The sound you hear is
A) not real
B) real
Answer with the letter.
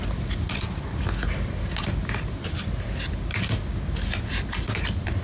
B